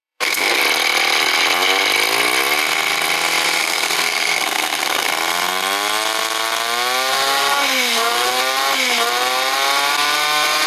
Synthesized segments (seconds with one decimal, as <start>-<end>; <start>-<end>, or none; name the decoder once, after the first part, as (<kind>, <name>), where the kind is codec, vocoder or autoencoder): 0.0-0.6 (codec, SNAC); 3.6-5.1; 7.1-8.4